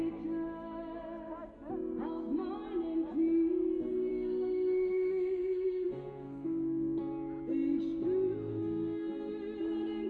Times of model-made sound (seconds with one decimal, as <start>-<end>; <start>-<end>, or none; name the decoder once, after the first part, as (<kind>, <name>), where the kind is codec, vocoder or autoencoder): 4.1-7.0 (codec, SNAC); 8.5-9.3

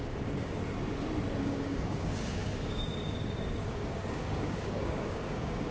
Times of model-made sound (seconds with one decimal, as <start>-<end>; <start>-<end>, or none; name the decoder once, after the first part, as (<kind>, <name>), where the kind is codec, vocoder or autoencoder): 0.0-0.6 (codec, DAC); 1.4-5.7

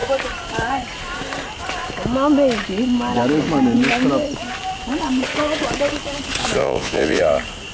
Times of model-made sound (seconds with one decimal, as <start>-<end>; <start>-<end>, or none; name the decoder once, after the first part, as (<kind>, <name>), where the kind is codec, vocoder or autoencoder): 6.6-7.2 (vocoder, Vocos)

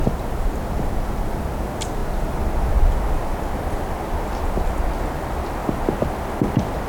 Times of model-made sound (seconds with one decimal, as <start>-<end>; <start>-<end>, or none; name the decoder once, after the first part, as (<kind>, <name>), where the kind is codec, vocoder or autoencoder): none

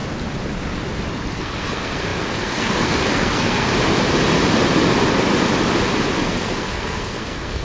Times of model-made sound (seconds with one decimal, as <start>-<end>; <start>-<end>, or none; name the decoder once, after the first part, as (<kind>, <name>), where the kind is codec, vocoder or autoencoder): 1.3-3.7 (codec, SNAC); 6.2-7.6

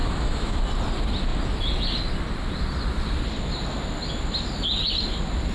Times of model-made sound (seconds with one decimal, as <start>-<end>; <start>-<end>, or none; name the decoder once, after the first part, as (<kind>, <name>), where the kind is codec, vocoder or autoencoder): 0.0-0.6 (autoencoder, DAC-VAE)

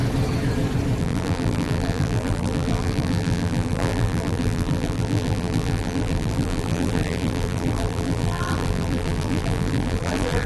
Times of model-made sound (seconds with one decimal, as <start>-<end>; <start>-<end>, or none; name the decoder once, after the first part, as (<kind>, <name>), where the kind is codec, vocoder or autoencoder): 1.0-10.5 (vocoder, BigVGAN v2)